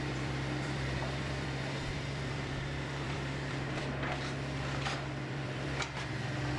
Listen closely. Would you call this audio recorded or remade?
remade